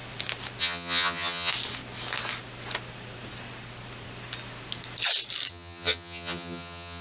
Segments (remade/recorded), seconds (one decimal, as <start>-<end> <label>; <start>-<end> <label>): 0.0-0.6 recorded; 0.6-1.5 remade; 1.5-5.5 recorded; 5.5-7.0 remade